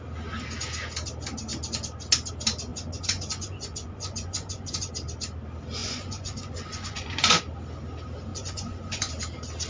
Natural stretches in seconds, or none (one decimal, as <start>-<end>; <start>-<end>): 0.0-2.7; 4.9-5.8; 7.4-8.3; 9.1-9.7